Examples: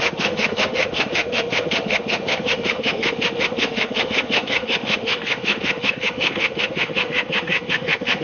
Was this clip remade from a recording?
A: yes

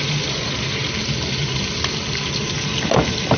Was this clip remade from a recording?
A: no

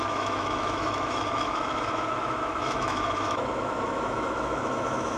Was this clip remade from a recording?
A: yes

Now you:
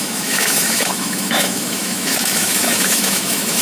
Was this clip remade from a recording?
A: yes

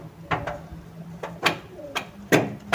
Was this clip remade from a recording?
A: no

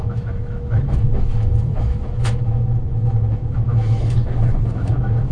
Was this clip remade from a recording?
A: yes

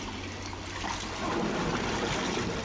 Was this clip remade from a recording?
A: no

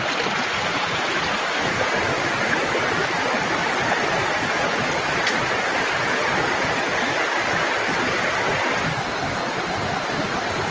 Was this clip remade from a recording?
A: no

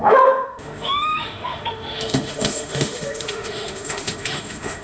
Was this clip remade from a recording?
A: yes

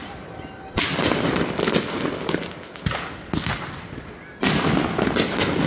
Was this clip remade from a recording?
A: no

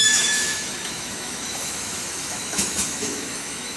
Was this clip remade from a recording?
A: yes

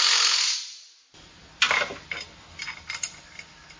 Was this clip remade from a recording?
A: no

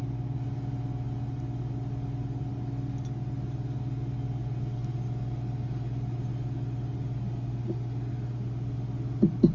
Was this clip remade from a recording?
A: no